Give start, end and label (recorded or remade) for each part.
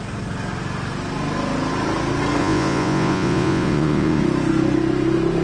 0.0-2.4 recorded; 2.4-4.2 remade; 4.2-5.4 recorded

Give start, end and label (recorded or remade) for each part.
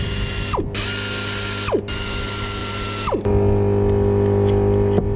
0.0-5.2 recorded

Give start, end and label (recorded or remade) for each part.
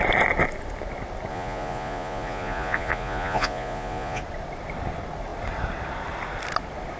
0.0-1.3 recorded; 1.3-4.2 remade; 4.2-7.0 recorded